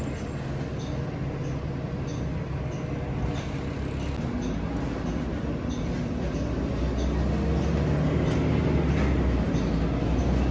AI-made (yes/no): no